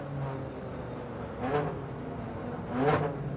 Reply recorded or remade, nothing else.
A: recorded